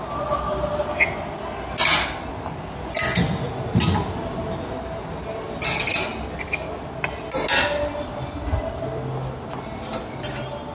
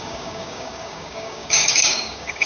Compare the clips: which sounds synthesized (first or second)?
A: second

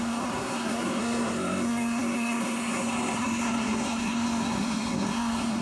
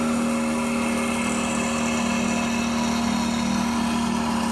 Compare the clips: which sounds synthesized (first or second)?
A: first